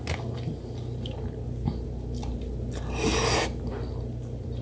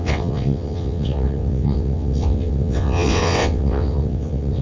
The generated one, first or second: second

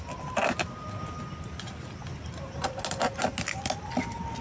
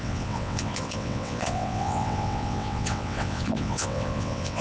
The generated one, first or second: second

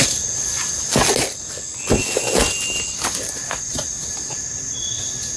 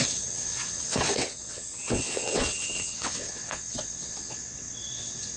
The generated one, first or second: second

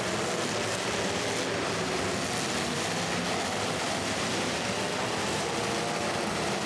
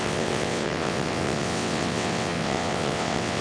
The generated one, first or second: second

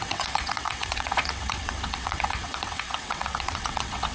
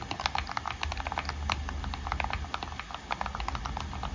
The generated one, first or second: first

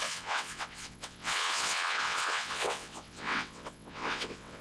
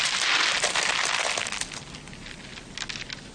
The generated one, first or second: first